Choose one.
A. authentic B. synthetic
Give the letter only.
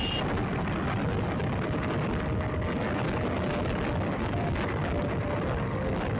A